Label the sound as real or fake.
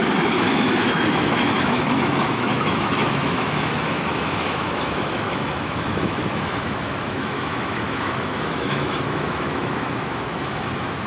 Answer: fake